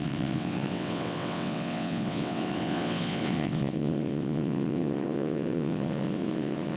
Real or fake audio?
fake